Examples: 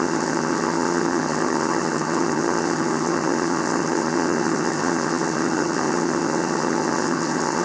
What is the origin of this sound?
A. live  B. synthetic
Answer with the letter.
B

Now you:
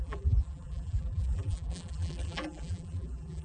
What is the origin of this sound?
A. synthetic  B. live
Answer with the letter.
A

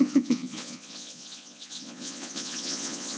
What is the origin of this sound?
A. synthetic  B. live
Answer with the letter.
A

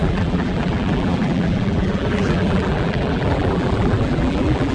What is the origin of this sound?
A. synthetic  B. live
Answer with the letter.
A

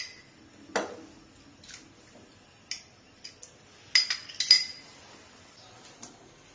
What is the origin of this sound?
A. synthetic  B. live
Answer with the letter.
B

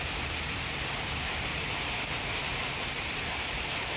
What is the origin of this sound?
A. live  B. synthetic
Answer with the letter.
B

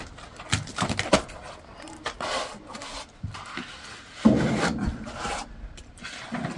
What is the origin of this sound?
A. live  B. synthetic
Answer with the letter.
A